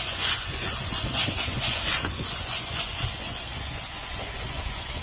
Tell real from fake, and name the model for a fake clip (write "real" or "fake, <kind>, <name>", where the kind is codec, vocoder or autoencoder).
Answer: fake, vocoder, Vocos